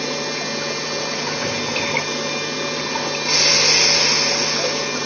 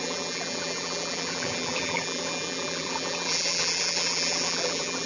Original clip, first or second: first